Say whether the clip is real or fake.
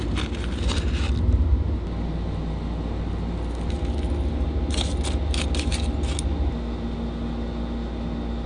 real